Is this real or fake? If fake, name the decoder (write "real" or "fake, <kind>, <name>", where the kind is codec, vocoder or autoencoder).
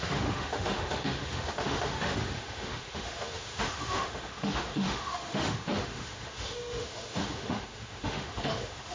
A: fake, autoencoder, DAC-VAE